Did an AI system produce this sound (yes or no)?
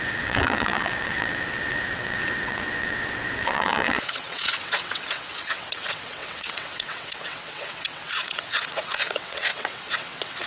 yes